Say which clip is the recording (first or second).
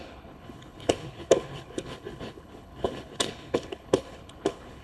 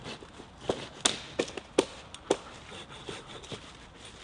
second